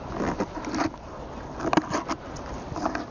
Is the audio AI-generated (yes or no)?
no